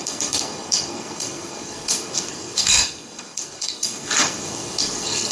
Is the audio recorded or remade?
remade